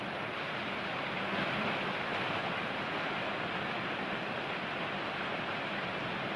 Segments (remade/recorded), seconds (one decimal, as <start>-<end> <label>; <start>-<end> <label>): 0.0-6.4 recorded